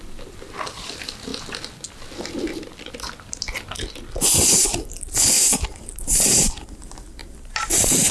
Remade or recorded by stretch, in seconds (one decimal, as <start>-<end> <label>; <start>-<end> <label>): 0.0-1.3 remade; 1.3-5.8 recorded; 5.8-8.1 remade